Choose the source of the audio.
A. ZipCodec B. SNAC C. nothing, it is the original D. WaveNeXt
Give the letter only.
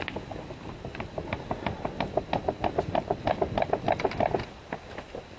C